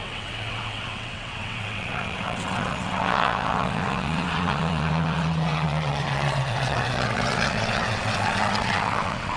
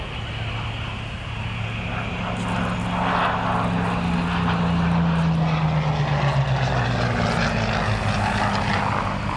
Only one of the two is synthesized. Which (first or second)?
first